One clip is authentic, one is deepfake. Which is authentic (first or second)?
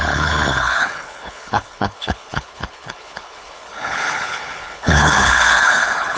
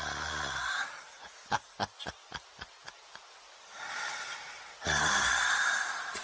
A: second